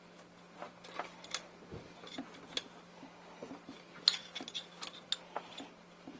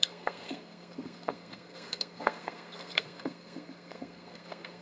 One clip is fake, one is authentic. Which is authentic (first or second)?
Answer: first